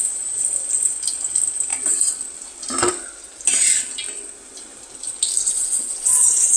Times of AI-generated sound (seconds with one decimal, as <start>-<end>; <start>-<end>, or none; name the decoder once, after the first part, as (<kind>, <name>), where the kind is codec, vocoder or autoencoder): 5.4-6.6 (vocoder, Vocos)